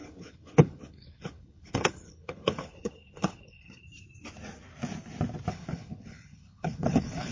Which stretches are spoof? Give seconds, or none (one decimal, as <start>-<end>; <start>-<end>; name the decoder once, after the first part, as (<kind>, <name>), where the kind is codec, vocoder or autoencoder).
0.0-3.8 (codec, HILCodec); 5.5-7.3